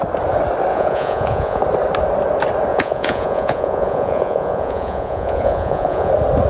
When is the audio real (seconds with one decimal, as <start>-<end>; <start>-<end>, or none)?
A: 0.0-0.7; 1.6-2.7; 6.1-6.5